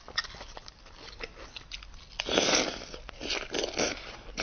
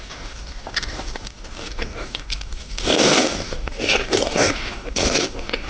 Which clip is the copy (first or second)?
second